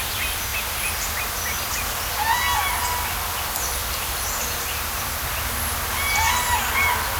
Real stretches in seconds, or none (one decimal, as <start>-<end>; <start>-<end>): 0.0-3.8; 5.0-7.2

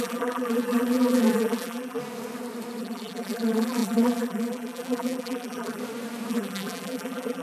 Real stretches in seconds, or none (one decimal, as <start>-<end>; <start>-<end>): 2.0-2.8; 5.8-6.3

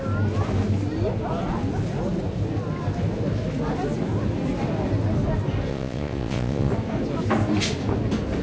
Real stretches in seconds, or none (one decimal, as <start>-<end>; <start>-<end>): 0.0-5.7; 6.7-8.4

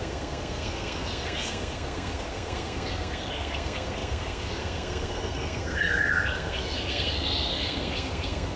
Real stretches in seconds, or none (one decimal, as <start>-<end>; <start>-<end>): none

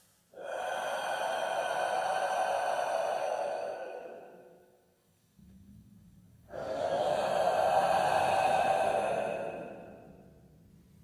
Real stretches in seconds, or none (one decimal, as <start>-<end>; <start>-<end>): 0.0-3.2; 7.3-11.0

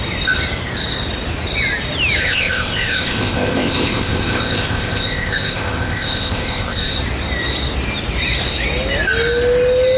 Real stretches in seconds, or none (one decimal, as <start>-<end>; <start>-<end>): 0.0-2.2; 7.0-10.0

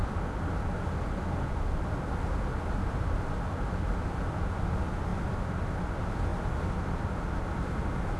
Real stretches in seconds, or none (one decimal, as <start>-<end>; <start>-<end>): 0.0-8.2

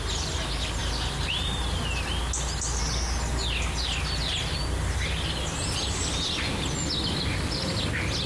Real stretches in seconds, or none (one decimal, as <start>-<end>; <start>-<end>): 0.0-8.3